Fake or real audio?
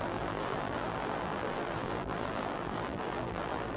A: fake